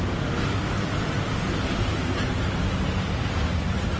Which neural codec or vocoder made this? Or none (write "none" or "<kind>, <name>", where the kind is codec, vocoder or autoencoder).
none